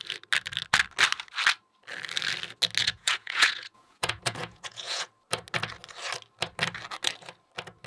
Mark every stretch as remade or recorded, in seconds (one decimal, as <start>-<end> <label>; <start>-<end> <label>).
0.0-2.8 recorded; 2.8-5.1 remade; 5.1-7.9 recorded